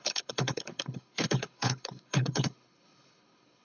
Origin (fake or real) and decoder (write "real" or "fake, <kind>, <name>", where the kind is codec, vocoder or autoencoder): fake, codec, HILCodec